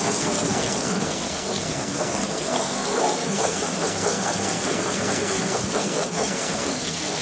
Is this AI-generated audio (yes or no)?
yes